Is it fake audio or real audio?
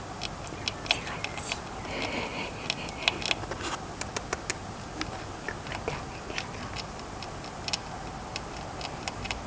real